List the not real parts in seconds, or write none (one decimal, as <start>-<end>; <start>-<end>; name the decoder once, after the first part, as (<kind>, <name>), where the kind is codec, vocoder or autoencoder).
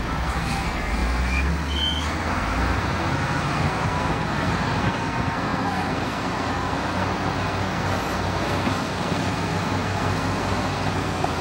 0.0-11.4 (codec, SNAC)